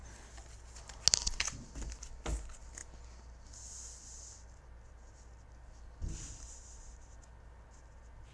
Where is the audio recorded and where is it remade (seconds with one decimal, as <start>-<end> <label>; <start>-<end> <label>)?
0.0-8.3 recorded

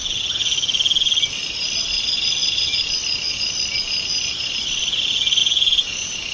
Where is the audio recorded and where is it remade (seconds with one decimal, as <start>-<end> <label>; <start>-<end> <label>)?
0.0-5.4 recorded; 5.4-6.3 remade

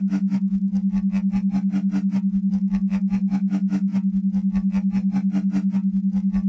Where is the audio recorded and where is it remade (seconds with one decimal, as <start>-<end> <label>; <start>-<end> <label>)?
0.0-0.7 remade; 0.7-2.5 recorded; 2.5-3.9 remade; 3.9-6.5 recorded

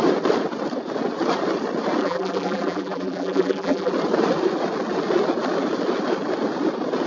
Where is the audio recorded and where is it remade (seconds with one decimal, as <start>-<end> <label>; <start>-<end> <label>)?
0.0-2.0 recorded; 2.0-3.9 remade; 3.9-7.1 recorded

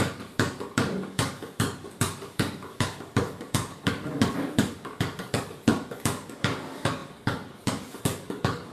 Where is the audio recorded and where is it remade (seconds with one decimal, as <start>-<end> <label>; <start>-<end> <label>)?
0.0-8.7 remade

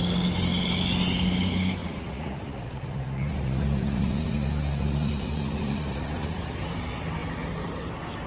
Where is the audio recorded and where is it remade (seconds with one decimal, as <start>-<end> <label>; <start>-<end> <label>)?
0.0-1.8 recorded; 1.8-6.5 remade; 6.5-8.3 recorded

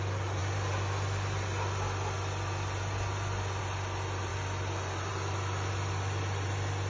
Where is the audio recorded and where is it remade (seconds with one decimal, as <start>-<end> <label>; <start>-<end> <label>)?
0.0-6.9 recorded